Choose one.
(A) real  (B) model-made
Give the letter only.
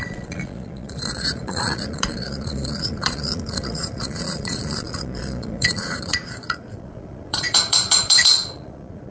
B